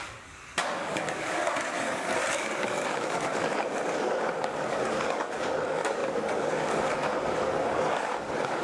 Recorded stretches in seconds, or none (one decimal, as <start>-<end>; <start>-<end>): none